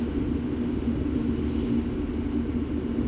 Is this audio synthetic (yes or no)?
no